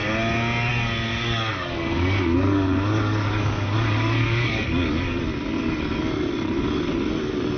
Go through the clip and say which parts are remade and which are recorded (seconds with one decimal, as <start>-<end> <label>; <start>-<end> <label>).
0.0-1.1 recorded; 1.1-5.2 remade; 5.2-7.6 recorded